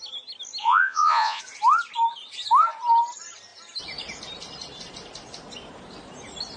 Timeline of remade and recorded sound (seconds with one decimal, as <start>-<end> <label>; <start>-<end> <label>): 0.0-0.6 recorded; 0.6-1.4 remade; 1.4-6.6 recorded